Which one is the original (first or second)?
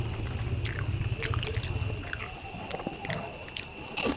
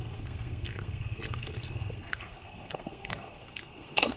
first